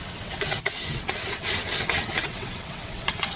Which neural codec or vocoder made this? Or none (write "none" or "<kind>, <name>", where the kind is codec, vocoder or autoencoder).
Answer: vocoder, WaveNeXt